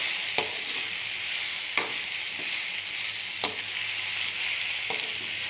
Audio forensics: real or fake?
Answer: real